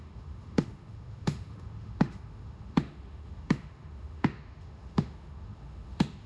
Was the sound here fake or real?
fake